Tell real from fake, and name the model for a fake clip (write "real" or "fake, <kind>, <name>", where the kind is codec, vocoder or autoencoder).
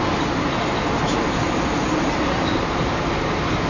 real